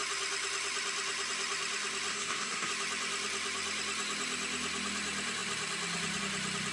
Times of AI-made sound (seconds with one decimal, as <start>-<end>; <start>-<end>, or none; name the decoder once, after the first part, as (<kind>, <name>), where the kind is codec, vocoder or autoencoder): 2.1-2.7 (codec, SNAC)